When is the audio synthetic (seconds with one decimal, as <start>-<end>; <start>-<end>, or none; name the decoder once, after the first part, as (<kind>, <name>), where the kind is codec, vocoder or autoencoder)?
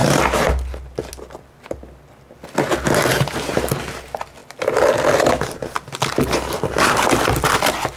0.0-0.5 (vocoder, BigVGAN v2)